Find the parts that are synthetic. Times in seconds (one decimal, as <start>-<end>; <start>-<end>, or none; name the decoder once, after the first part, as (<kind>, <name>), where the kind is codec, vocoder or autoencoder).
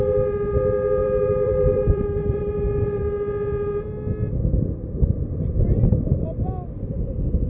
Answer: 1.0-3.0 (vocoder, BigVGAN v2)